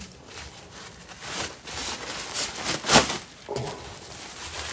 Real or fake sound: real